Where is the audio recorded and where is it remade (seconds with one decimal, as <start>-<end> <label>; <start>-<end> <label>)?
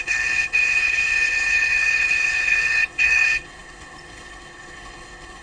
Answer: 0.0-5.4 remade